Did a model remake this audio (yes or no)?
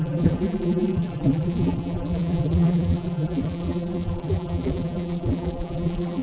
yes